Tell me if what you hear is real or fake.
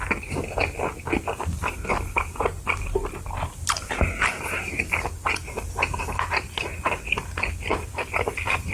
real